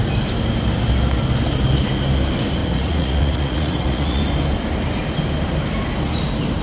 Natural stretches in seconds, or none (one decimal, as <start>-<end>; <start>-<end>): 0.0-2.6; 4.2-6.6